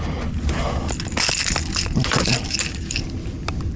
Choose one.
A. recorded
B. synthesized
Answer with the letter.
A